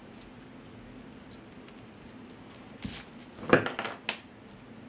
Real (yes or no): yes